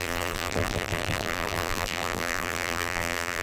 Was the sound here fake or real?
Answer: fake